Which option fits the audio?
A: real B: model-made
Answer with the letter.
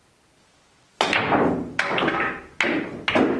A